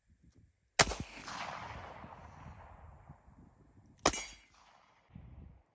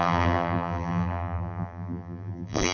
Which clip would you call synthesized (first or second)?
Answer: second